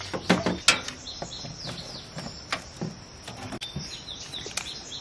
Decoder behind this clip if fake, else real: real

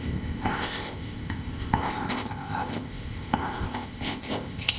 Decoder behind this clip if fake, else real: fake, codec, ZipCodec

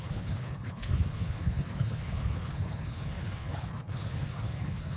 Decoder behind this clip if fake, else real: fake, codec, HILCodec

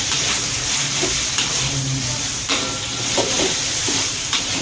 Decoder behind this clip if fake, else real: fake, vocoder, BigVGAN v2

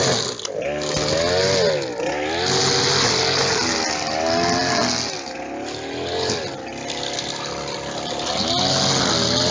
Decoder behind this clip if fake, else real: real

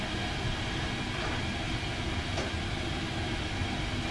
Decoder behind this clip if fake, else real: real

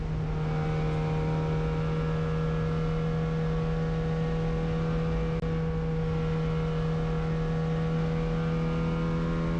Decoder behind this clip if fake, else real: real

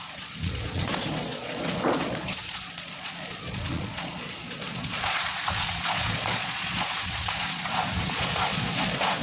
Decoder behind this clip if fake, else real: fake, vocoder, Vocos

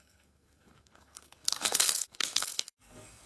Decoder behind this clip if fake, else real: fake, codec, SNAC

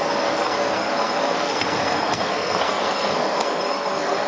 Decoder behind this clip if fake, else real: fake, codec, SNAC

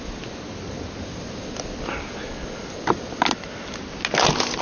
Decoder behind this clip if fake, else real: real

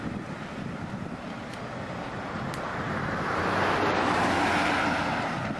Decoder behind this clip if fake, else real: real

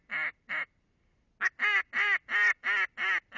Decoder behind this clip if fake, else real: real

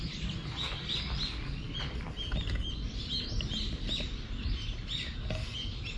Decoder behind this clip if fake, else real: real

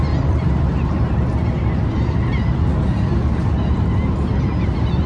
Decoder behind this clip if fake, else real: real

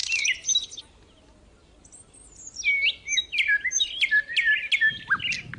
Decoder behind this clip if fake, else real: real